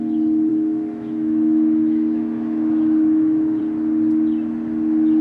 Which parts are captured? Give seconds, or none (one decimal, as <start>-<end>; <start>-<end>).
0.0-0.5; 3.6-5.2